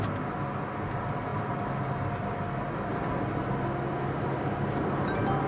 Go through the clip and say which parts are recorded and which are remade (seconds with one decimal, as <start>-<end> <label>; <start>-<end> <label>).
0.0-5.5 recorded